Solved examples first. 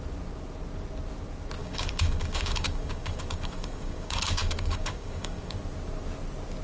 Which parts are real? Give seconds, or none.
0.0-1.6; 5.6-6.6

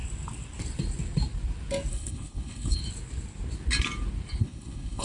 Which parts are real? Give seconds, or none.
0.0-1.9; 2.8-4.4

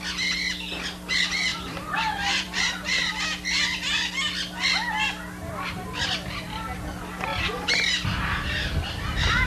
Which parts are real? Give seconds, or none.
0.0-1.5; 3.1-9.5

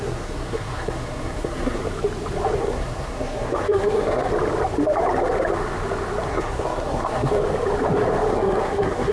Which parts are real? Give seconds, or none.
1.8-2.6; 4.3-6.3; 7.4-8.3

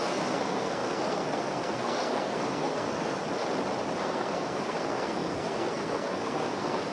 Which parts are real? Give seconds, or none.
3.2-4.0

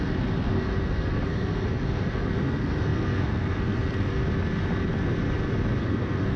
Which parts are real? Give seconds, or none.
4.2-5.8